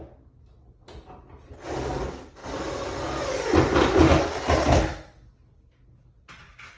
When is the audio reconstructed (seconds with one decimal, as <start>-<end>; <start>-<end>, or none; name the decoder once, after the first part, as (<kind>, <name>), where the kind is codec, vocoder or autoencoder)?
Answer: none